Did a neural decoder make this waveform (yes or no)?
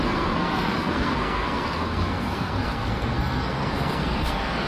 yes